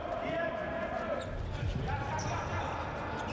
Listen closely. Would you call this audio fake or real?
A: real